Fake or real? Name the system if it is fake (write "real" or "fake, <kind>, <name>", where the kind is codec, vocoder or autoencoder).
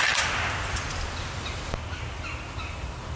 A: real